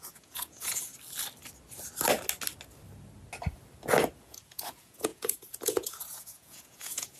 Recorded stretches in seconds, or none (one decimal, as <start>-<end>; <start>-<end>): 0.9-4.2